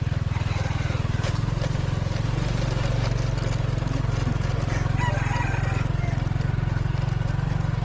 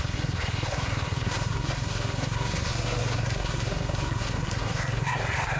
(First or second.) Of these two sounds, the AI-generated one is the second